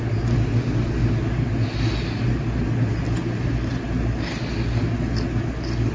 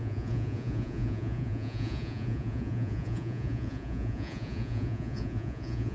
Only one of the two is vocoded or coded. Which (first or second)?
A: second